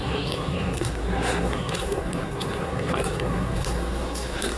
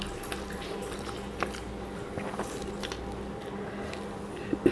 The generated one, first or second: first